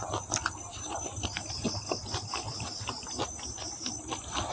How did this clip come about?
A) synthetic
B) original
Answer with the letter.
B